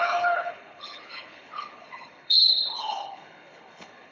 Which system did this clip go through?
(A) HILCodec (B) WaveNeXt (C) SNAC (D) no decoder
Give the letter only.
A